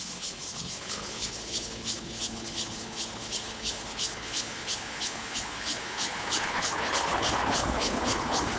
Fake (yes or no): yes